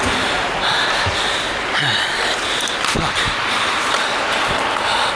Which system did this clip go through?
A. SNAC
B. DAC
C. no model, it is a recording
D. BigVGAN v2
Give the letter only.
C